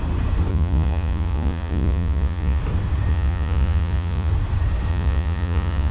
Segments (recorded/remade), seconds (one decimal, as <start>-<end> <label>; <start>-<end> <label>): 0.0-0.5 recorded; 0.5-2.6 remade; 2.6-3.1 recorded; 3.1-4.3 remade; 4.3-4.9 recorded; 4.9-5.9 remade